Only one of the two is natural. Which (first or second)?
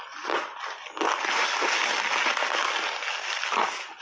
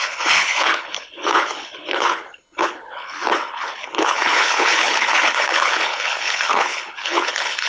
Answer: first